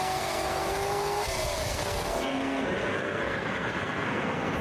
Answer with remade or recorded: remade